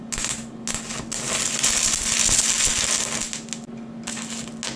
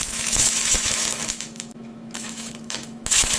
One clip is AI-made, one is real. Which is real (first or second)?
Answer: first